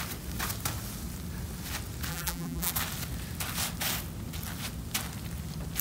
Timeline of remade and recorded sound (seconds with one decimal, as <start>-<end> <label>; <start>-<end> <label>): 0.0-2.1 recorded; 2.1-2.7 remade; 2.7-5.8 recorded